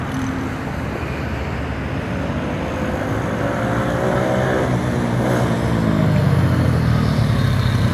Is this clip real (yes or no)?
yes